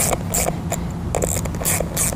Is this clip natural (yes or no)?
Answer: yes